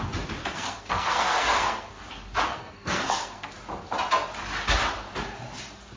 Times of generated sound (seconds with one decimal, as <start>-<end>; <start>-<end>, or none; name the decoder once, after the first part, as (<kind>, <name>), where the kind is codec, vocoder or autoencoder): 0.4-2.0 (codec, SNAC); 2.5-3.5